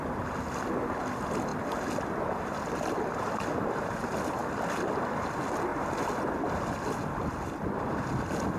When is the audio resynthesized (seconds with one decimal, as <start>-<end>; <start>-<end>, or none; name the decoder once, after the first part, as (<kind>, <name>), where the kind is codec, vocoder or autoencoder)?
none